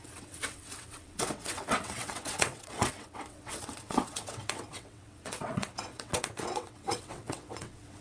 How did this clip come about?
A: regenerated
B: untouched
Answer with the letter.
A